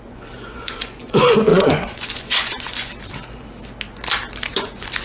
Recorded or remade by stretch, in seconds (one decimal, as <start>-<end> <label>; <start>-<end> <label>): 0.0-2.9 remade; 2.9-4.5 recorded; 4.5-5.0 remade